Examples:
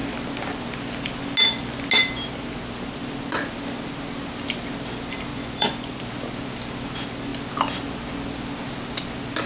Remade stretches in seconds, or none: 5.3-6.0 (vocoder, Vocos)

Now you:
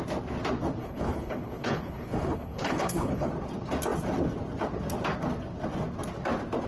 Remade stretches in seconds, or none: 0.8-3.3 (codec, HILCodec)

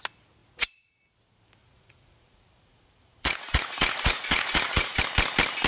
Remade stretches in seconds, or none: 0.4-1.0 (vocoder, Vocos); 1.6-5.0

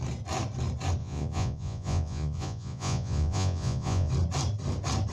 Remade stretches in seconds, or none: 1.0-4.1 (vocoder, Vocos)

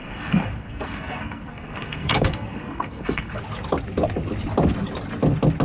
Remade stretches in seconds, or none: 0.0-3.4 (codec, SNAC)

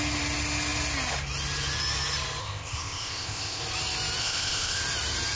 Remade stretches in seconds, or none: 2.4-3.6 (codec, ZipCodec); 4.2-4.8

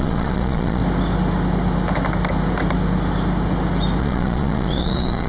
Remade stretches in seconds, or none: 0.0-0.8 (vocoder, Vocos); 4.0-5.3